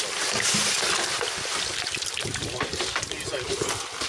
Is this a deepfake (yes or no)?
no